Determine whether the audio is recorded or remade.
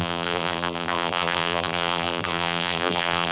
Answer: remade